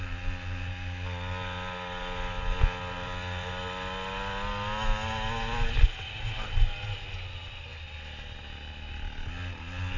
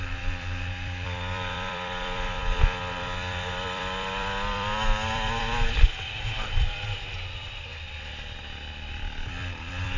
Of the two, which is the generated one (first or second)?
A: second